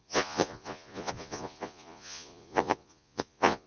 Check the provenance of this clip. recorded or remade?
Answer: remade